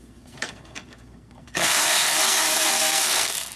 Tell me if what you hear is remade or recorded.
remade